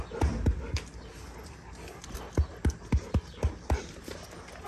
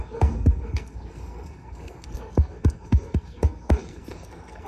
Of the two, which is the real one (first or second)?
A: first